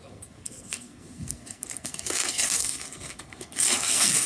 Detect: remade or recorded remade